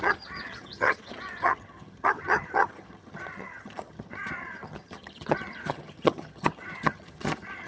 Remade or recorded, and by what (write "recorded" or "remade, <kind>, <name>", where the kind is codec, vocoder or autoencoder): remade, vocoder, HiFi-GAN